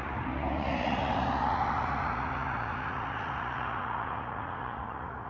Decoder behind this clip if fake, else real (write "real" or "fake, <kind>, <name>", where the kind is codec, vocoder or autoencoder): fake, vocoder, Vocos